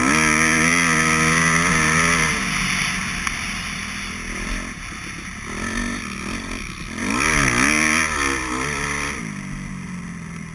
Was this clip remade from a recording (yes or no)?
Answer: no